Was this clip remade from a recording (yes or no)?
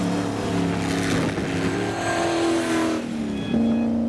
no